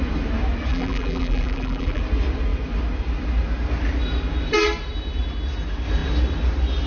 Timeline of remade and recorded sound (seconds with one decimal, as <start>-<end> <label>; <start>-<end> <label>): 0.0-0.7 recorded; 0.7-2.0 remade; 2.0-6.9 recorded